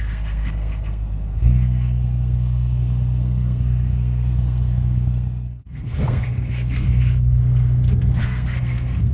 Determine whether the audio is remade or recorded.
remade